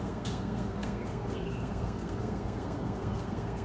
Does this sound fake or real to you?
fake